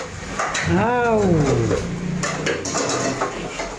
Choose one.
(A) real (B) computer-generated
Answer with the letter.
A